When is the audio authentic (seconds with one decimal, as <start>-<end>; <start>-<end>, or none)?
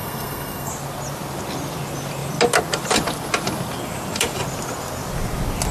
0.7-5.7